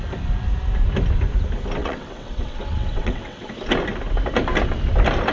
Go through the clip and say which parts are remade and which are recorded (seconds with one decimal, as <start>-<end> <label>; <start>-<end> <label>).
0.0-1.8 recorded; 1.8-3.5 remade; 3.5-5.3 recorded